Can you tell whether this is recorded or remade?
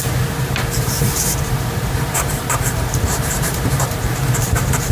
remade